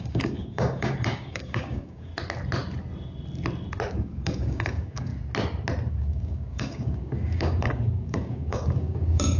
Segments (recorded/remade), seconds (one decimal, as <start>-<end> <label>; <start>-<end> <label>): 0.0-2.1 remade; 2.1-3.9 recorded; 3.9-5.1 remade; 5.1-5.9 recorded; 5.9-9.4 remade